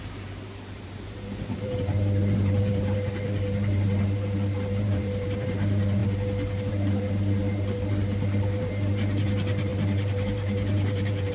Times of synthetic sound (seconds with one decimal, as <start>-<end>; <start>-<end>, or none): 0.0-6.0; 6.7-11.3